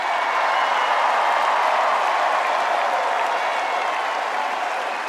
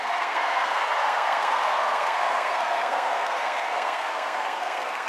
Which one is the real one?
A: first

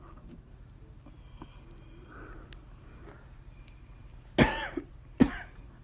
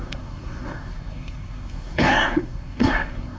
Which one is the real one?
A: first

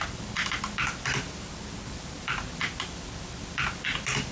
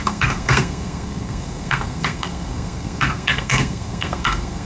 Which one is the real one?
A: first